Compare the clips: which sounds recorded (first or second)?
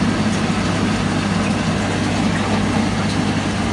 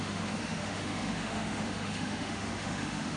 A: first